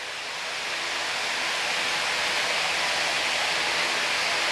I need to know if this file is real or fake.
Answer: real